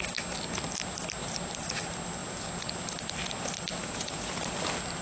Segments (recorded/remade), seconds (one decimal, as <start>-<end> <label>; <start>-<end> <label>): 0.0-3.8 recorded; 3.8-4.4 remade; 4.4-5.0 recorded